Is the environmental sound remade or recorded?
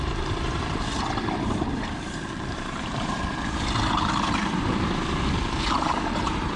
remade